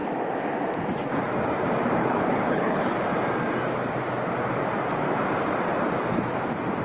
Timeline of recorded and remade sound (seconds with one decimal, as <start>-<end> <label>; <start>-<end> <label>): 0.0-2.0 recorded; 2.0-2.9 remade; 2.9-6.8 recorded